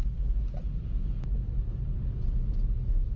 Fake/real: real